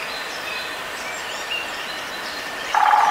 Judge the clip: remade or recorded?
remade